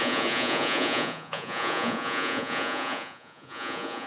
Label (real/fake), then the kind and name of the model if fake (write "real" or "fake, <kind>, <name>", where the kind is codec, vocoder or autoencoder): fake, vocoder, Vocos